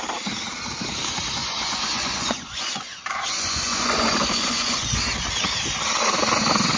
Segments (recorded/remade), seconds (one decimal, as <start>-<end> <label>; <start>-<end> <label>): 0.0-1.4 recorded; 1.4-5.0 remade; 5.0-6.8 recorded